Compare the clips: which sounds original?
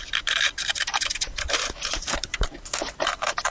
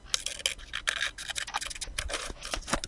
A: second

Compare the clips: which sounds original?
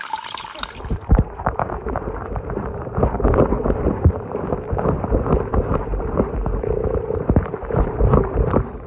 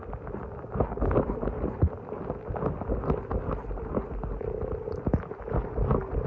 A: second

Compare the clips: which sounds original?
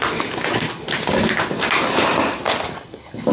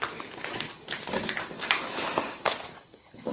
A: first